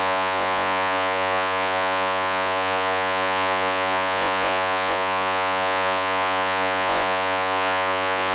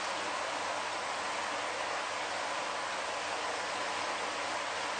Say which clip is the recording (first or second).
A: second